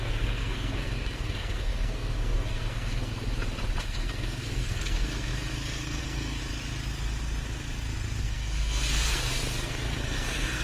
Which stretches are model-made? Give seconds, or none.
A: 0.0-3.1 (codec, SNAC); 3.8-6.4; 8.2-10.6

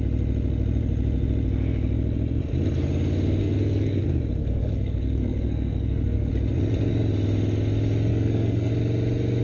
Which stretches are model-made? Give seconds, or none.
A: 3.4-4.0 (codec, SNAC); 4.4-6.3; 8.1-8.7

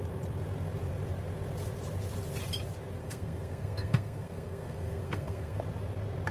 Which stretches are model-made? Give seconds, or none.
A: 3.0-5.6 (codec, SNAC)

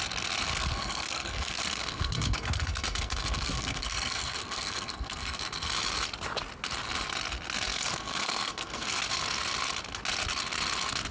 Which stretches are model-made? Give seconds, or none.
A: 0.5-5.4 (codec, SNAC); 7.7-9.0